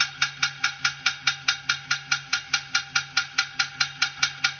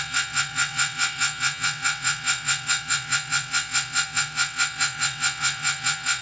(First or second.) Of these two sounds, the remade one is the second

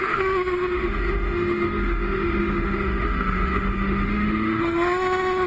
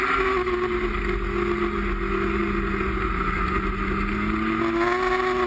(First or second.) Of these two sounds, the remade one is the first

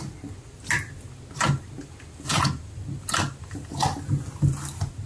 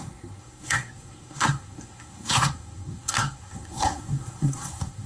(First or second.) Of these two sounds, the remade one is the second